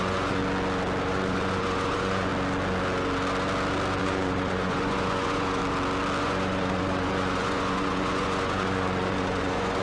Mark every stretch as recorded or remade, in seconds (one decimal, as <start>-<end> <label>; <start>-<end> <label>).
0.0-0.4 remade; 0.4-1.1 recorded; 1.1-2.3 remade; 2.3-4.0 recorded; 4.0-5.6 remade; 5.6-6.2 recorded; 6.2-9.8 remade